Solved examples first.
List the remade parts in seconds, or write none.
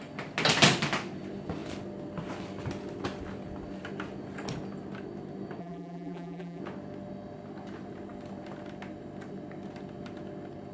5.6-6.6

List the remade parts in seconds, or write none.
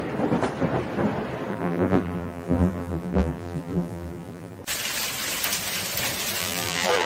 1.5-4.6; 6.4-7.1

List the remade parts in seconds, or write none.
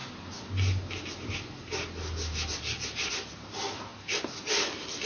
none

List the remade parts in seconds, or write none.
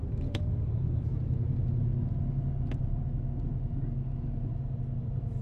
0.0-1.9; 5.0-5.4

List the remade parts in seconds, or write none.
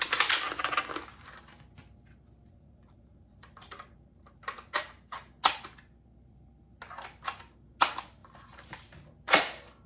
2.5-4.9; 8.2-9.1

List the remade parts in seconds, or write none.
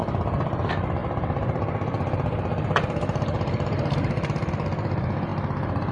1.0-4.5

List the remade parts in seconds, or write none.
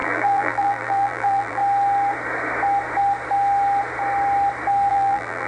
0.0-1.6; 4.9-5.5